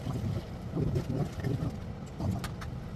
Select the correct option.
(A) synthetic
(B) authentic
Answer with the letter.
B